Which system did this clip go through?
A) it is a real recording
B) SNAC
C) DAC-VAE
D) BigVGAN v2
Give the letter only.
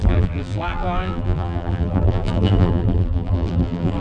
D